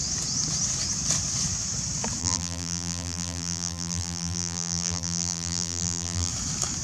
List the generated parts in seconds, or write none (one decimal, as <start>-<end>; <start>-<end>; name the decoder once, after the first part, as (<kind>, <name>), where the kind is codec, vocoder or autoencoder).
2.2-6.3 (vocoder, BigVGAN v2)